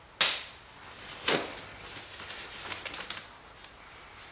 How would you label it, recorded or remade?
recorded